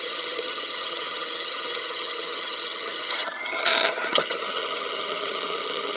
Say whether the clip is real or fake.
fake